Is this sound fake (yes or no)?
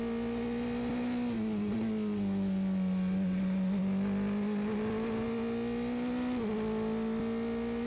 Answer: no